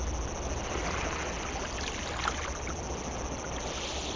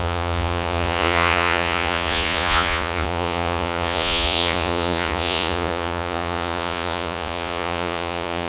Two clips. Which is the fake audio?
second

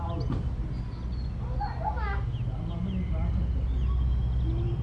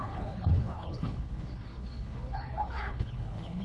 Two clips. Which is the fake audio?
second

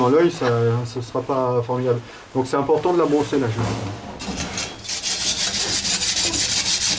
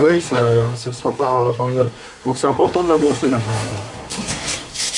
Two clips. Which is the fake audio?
second